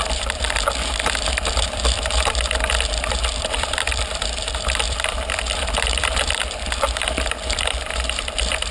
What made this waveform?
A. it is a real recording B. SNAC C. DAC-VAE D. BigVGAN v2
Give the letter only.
D